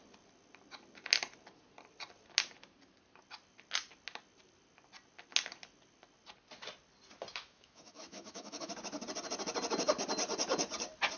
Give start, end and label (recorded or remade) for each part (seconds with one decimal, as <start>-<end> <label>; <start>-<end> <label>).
0.0-7.3 recorded; 7.3-8.7 remade; 8.7-11.2 recorded